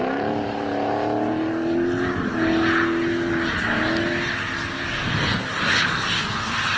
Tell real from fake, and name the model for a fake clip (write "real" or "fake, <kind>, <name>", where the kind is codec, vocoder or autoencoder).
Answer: real